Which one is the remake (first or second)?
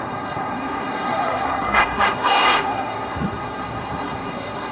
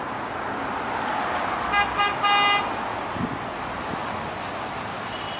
first